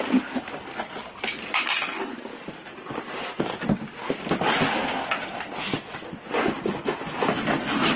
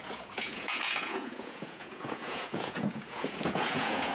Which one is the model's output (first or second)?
second